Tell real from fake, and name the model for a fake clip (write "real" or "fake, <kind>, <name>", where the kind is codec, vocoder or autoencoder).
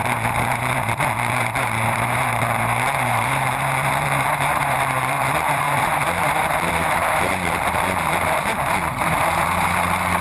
fake, vocoder, BigVGAN v2